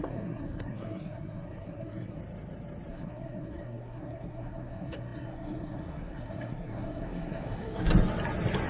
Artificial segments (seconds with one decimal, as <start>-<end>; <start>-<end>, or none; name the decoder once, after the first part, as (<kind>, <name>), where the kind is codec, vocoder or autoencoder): 0.0-2.2 (codec, SNAC); 2.9-7.9